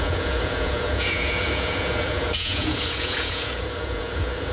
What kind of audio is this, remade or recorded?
remade